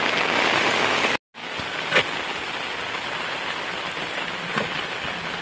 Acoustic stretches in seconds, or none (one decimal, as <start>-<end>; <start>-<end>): 0.0-5.4